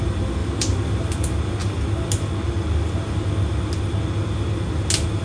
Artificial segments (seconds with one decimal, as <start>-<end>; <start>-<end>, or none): 0.4-1.1